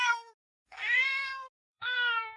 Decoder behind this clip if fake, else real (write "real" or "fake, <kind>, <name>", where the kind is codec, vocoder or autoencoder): fake, codec, SNAC